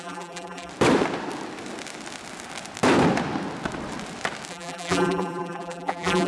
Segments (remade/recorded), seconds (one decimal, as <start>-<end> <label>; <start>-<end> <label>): 0.0-0.7 remade; 0.7-4.5 recorded; 4.5-6.3 remade